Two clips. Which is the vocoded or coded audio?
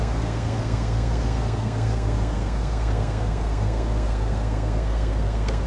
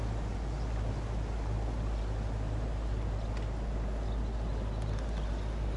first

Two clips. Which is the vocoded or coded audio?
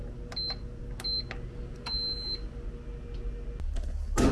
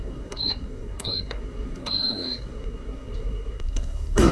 second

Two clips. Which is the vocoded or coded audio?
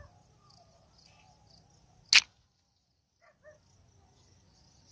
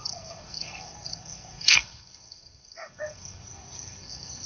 second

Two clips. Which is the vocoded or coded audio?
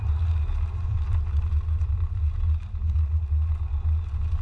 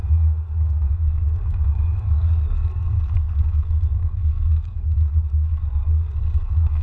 second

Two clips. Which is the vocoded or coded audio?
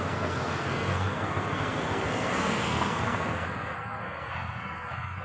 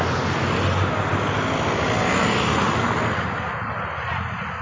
first